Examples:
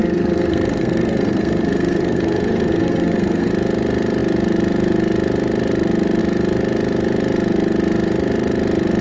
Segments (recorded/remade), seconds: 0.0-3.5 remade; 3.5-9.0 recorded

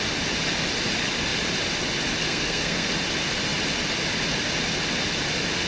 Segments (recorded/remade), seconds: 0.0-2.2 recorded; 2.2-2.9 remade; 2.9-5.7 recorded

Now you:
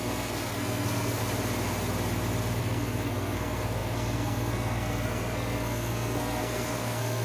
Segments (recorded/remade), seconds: 0.0-1.2 remade; 1.2-2.6 recorded; 2.6-7.2 remade